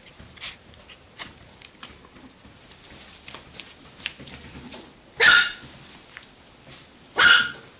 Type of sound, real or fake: fake